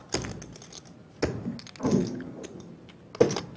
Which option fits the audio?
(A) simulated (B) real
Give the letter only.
B